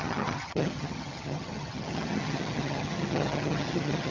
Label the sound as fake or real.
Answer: fake